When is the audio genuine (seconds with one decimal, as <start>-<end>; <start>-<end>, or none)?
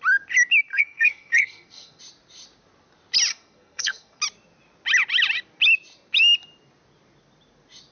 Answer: 0.0-0.7; 2.0-3.3; 4.2-7.9